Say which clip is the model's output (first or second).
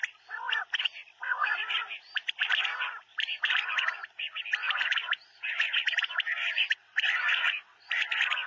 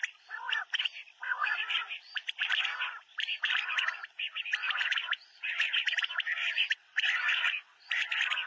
second